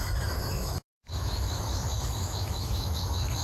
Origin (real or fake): fake